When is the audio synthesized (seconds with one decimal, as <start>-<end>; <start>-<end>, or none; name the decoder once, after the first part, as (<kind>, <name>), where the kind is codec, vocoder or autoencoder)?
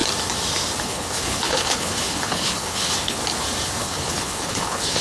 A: 0.8-3.2 (codec, HILCodec); 3.8-5.0